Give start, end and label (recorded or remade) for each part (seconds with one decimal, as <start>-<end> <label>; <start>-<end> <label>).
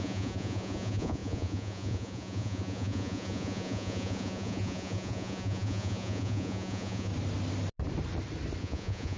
0.0-7.1 remade; 7.1-8.6 recorded; 8.6-9.2 remade